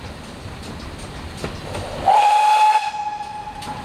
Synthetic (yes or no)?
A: no